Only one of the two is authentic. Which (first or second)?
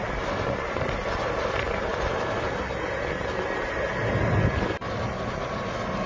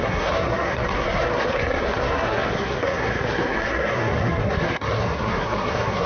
first